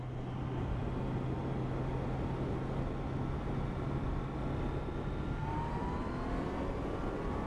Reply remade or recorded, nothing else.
recorded